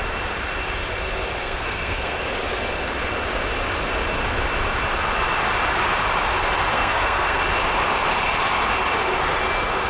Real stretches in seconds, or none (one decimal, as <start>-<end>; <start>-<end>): 0.0-1.4; 2.2-6.7; 7.4-9.9

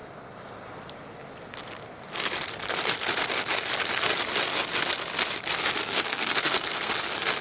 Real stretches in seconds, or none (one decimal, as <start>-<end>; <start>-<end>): 0.0-5.8; 6.9-7.4

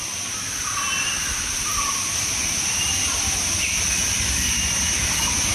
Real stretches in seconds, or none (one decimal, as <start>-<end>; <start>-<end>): 0.0-5.5

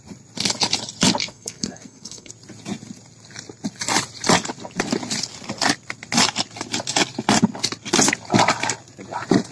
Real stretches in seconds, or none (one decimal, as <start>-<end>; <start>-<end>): 0.0-1.2; 2.3-9.5

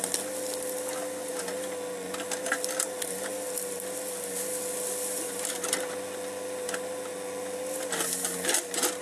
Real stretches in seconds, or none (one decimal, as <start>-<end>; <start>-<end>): 0.0-9.0

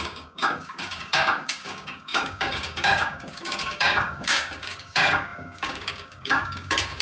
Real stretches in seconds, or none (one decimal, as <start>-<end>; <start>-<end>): none